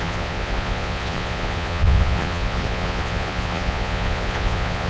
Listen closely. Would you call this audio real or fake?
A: fake